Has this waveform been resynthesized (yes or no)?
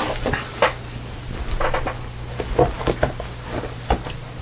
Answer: no